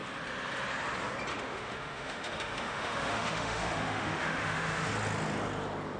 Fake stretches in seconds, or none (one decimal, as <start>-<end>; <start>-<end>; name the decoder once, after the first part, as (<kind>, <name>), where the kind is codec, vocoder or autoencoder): 1.3-4.9 (autoencoder, DAC-VAE)